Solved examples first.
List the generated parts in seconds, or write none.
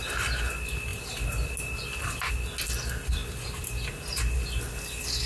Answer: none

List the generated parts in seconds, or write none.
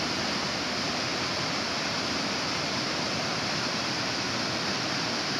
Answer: none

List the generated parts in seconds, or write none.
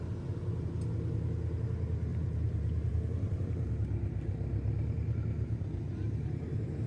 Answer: 2.1-3.7 (vocoder, BigVGAN v2)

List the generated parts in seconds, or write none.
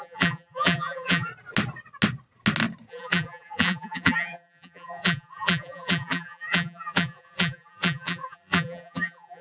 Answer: 0.0-1.3 (vocoder, BigVGAN v2); 2.9-9.4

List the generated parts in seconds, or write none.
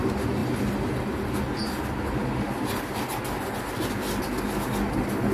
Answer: none